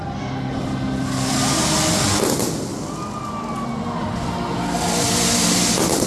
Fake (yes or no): no